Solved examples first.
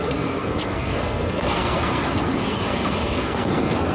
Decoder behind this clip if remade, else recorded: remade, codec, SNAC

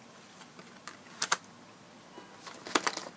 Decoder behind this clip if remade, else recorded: recorded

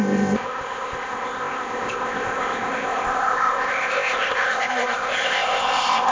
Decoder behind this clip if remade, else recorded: remade, codec, ZipCodec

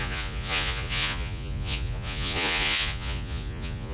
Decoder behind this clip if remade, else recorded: remade, vocoder, Vocos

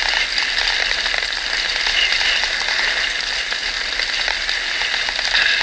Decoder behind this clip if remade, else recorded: recorded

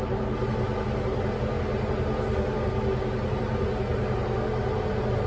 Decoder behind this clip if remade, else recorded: recorded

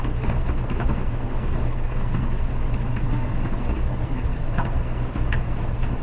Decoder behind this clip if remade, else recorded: remade, codec, SNAC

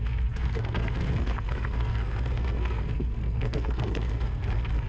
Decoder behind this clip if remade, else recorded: remade, codec, SNAC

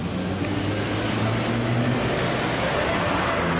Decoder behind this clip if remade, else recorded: recorded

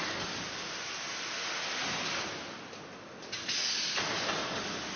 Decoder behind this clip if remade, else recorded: recorded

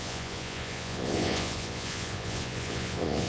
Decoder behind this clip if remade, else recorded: remade, vocoder, Vocos